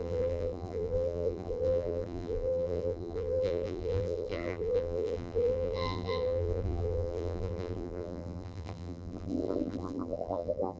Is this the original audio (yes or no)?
no